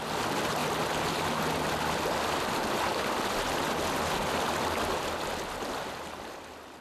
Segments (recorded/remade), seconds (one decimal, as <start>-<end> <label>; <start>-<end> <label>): 0.0-6.8 recorded